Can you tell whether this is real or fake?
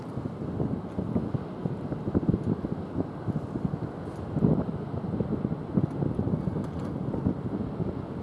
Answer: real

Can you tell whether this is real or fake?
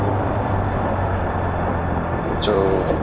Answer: fake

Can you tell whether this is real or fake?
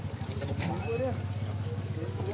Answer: real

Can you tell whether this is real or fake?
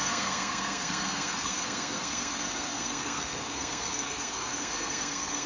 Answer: fake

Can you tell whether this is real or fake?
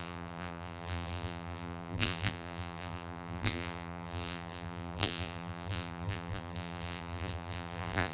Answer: fake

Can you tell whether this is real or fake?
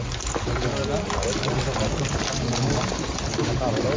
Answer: real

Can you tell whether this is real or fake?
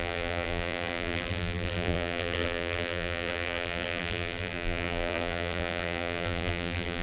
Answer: fake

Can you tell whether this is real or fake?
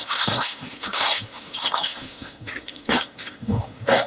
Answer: fake